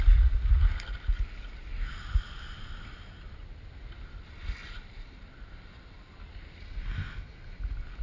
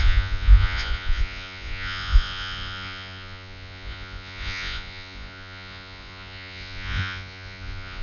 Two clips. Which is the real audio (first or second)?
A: first